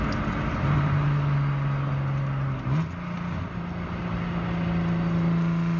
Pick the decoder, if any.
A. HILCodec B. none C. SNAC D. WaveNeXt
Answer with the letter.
B